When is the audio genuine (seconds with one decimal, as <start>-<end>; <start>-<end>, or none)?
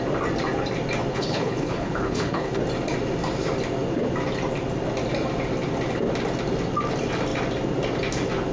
0.0-1.1; 2.6-8.5